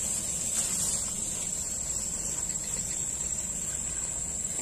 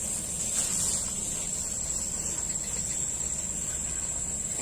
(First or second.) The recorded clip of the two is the second